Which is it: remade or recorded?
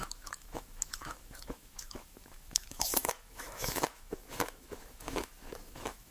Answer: remade